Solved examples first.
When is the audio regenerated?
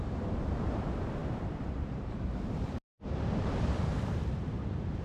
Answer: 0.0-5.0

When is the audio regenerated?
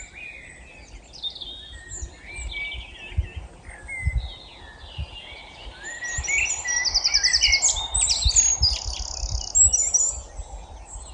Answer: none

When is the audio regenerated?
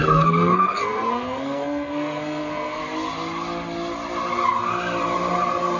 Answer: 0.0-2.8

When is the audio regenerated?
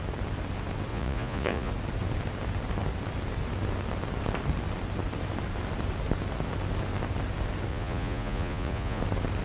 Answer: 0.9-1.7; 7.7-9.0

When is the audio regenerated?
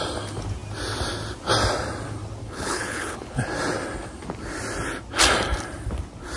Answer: 2.4-3.4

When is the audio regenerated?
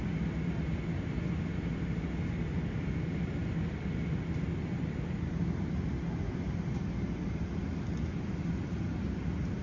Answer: none